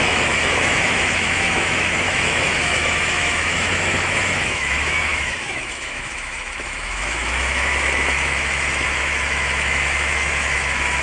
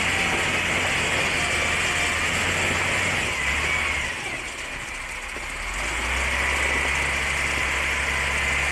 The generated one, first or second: first